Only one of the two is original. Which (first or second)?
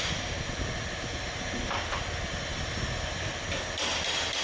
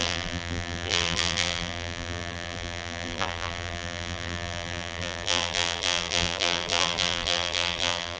first